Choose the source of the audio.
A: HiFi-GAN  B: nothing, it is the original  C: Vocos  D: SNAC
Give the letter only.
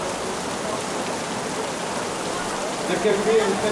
B